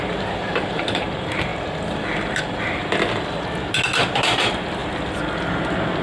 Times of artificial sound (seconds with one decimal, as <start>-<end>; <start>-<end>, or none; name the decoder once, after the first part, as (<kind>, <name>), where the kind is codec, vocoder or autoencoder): 0.0-1.5 (vocoder, BigVGAN v2); 2.4-2.8; 4.1-4.8